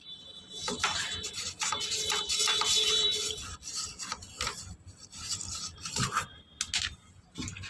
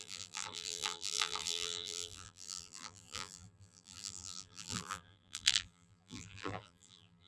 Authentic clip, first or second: first